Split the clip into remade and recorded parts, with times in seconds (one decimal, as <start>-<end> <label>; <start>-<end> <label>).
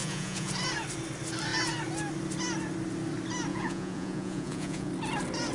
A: 0.0-0.5 remade; 0.5-3.5 recorded; 3.5-4.9 remade; 4.9-5.5 recorded